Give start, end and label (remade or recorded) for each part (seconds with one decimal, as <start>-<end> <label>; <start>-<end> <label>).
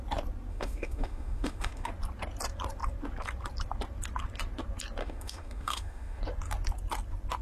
0.0-0.5 recorded; 0.5-1.9 remade; 1.9-5.0 recorded; 5.0-6.2 remade; 6.2-7.4 recorded